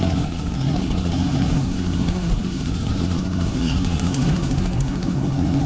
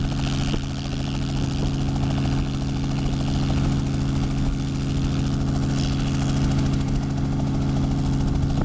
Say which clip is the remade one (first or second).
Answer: first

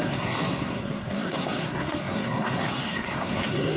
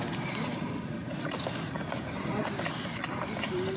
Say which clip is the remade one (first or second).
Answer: first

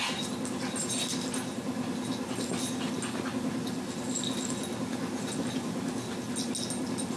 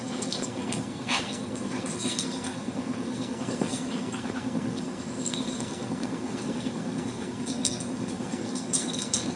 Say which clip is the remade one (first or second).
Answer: second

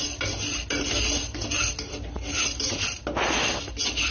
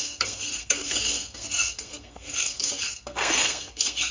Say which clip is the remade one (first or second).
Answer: second